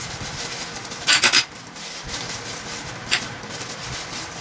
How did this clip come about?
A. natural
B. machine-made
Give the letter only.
A